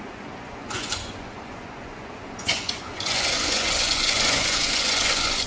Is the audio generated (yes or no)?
yes